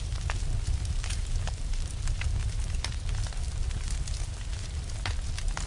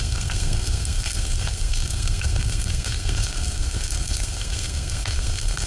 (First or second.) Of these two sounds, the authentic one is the first